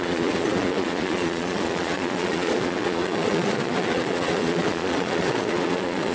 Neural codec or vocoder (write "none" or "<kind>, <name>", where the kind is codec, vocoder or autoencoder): vocoder, Vocos